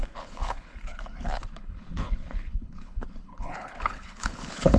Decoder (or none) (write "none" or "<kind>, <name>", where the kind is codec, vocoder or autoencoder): codec, HILCodec